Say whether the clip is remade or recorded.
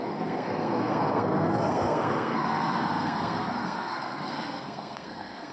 remade